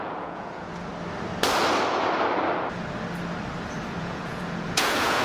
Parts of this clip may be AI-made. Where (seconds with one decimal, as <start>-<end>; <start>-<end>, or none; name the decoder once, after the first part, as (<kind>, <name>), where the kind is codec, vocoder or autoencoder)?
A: 0.0-0.9 (vocoder, Vocos); 4.0-5.2